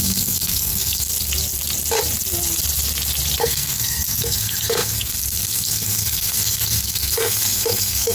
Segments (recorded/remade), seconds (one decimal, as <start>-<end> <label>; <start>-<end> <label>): 0.0-1.1 remade; 1.1-3.4 recorded; 3.4-8.1 remade